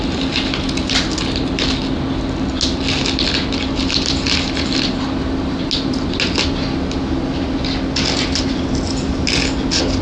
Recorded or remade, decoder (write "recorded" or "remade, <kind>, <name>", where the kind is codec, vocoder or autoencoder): recorded